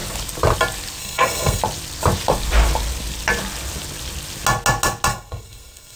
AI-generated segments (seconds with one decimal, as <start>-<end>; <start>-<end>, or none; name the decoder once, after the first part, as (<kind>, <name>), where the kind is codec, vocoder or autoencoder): 1.0-1.6 (codec, SNAC); 5.1-6.0